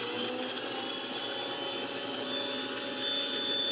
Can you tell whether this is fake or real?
fake